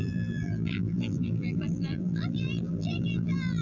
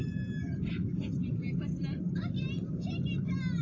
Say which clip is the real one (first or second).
second